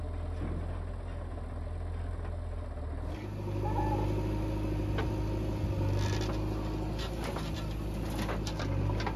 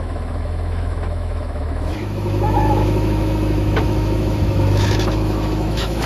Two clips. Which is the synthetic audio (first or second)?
second